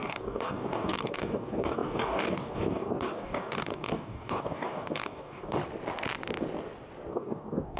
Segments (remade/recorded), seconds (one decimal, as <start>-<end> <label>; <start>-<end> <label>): 0.0-5.6 remade; 5.6-7.1 recorded; 7.1-7.8 remade